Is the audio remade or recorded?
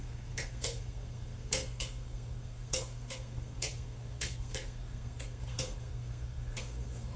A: remade